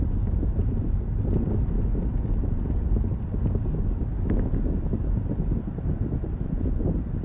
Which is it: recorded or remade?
recorded